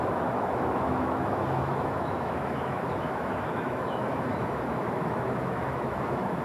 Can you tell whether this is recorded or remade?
remade